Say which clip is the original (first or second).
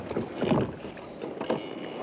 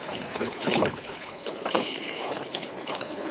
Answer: first